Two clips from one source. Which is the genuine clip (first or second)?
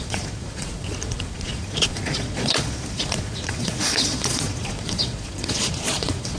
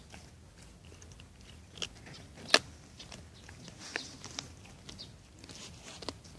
second